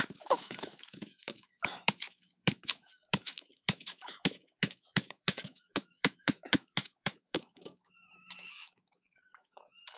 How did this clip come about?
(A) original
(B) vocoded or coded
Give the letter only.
B